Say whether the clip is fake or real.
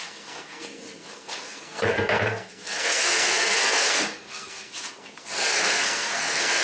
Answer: fake